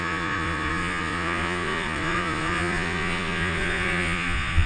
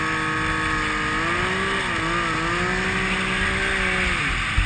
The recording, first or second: second